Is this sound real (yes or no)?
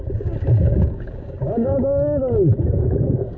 no